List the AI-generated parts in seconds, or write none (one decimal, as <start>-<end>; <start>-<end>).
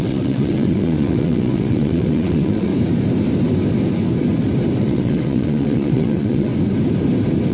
0.0-2.7; 4.8-6.5